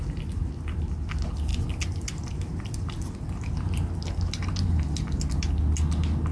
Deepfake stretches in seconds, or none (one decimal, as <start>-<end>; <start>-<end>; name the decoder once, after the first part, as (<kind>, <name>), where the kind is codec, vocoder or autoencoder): none